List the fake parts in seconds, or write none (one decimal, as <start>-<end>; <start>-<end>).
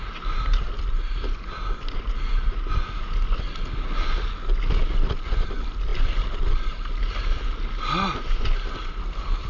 none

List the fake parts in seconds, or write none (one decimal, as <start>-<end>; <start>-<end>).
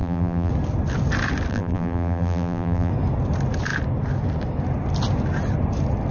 0.0-0.5; 1.5-2.9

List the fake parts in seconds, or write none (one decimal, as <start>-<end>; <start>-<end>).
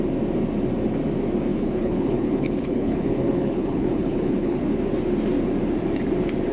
1.5-4.6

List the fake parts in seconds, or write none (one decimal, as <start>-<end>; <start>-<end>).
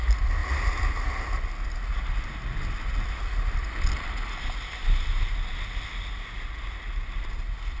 none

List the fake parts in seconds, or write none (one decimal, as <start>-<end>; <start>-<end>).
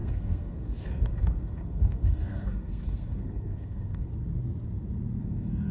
0.0-4.1; 5.2-5.7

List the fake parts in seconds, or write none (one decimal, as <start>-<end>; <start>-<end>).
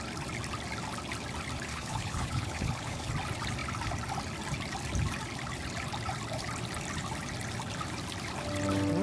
1.7-3.1